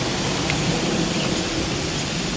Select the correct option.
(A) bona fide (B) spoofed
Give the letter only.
A